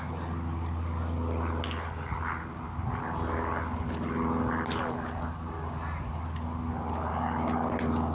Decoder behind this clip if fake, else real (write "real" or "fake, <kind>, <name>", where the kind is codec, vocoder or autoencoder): real